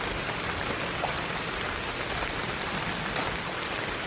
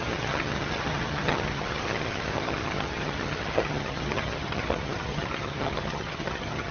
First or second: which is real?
first